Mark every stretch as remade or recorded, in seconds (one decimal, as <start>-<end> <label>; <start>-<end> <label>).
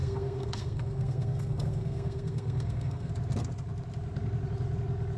0.0-3.1 remade; 3.1-5.2 recorded